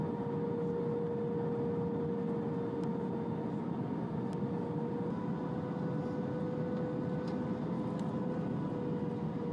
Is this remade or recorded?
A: recorded